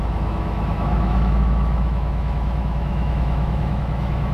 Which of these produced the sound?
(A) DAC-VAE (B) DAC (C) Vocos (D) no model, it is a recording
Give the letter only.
A